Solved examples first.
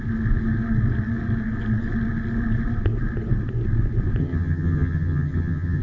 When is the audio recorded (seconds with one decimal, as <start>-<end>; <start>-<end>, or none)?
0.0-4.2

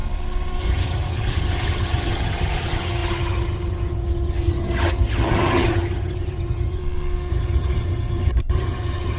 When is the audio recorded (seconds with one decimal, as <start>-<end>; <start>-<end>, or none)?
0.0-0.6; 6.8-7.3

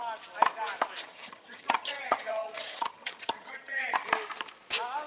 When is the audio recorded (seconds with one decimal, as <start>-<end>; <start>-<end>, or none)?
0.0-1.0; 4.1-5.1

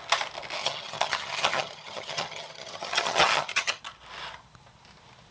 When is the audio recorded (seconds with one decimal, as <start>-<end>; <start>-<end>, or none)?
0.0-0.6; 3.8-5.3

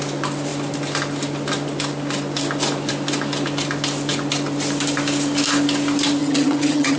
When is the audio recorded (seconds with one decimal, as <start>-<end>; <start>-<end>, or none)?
0.0-6.2

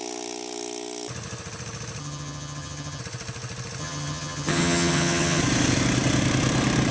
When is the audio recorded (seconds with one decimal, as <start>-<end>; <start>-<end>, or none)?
0.0-2.0; 3.0-3.8; 5.4-6.9

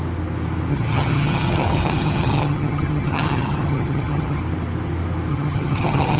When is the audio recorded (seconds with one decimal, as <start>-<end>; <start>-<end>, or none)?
0.0-0.7; 4.4-5.3

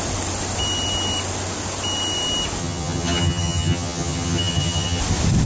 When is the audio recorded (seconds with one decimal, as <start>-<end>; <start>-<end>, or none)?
0.0-2.6; 5.0-5.5